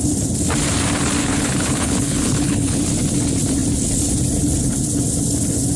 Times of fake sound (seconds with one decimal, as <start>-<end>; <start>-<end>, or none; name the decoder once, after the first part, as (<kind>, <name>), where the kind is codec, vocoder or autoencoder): 1.2-2.8 (codec, HILCodec)